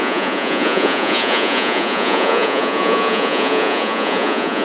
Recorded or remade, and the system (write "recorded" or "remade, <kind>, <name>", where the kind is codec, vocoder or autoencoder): remade, vocoder, Vocos